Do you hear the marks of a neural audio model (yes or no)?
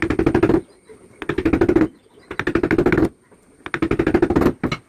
no